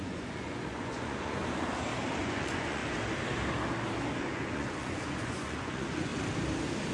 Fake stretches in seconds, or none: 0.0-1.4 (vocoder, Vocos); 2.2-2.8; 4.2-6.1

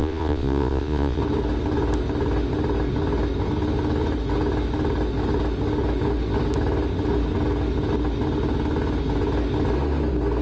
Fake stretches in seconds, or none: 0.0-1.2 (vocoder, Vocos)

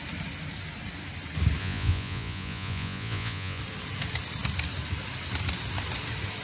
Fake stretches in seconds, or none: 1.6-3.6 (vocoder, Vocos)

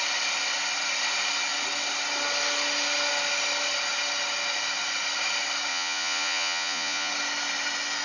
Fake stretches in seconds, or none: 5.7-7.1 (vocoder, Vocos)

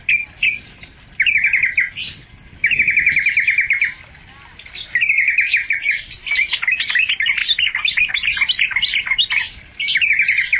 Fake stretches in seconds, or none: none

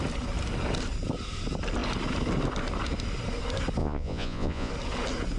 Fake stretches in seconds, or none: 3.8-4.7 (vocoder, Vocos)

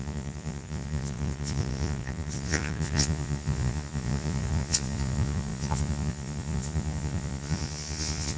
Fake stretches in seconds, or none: 0.0-8.4 (vocoder, Vocos)

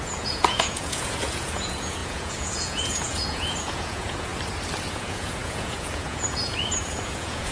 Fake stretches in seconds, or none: 0.0-4.3 (vocoder, Vocos); 4.9-7.5